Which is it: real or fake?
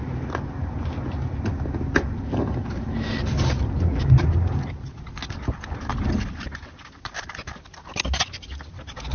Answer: real